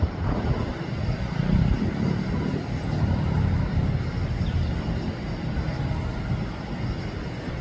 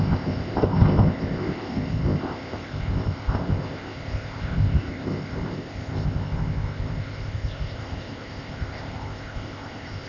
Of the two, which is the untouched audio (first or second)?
first